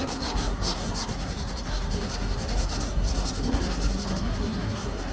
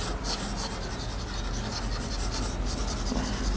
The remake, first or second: first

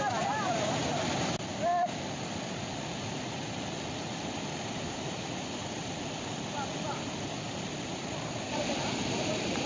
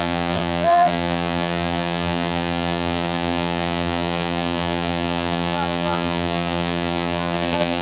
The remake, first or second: second